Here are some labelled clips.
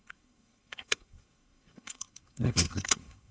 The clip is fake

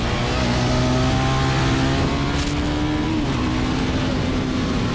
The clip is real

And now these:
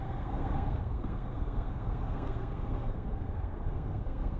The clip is fake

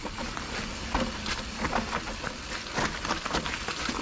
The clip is real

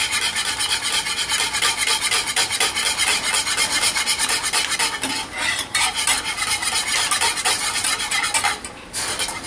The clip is real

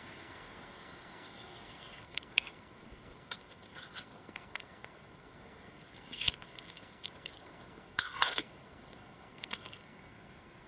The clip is fake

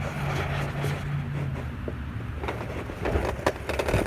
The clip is real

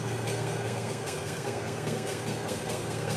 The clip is fake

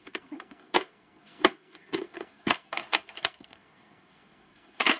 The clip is fake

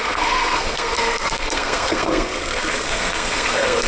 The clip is fake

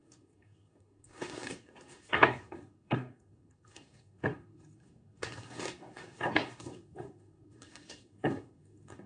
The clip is fake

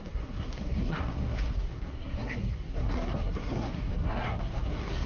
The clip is fake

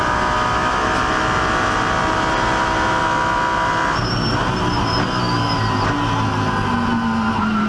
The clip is real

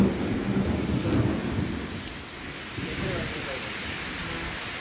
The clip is real